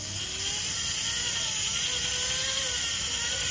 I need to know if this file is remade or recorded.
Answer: recorded